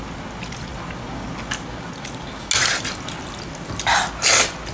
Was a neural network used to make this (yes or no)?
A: no